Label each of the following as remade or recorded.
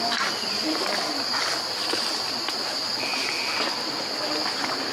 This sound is recorded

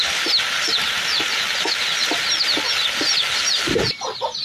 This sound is recorded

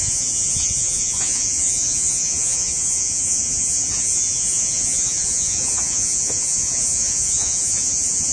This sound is remade